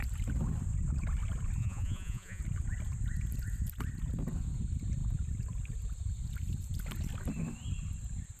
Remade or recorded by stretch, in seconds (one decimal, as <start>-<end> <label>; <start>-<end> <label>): 0.0-1.6 recorded; 1.6-2.4 remade; 2.4-8.4 recorded